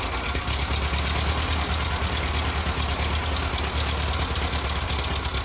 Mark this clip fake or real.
real